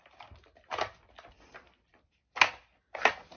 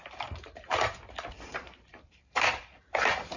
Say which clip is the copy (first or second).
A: second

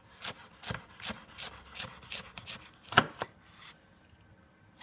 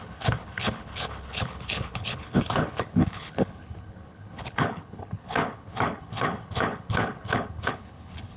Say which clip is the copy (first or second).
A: second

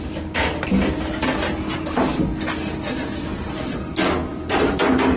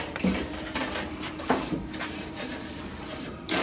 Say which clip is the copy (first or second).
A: second